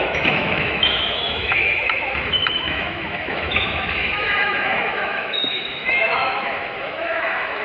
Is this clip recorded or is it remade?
remade